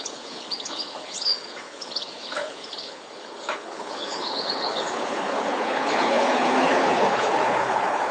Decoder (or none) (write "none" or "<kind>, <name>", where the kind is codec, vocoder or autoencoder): codec, HILCodec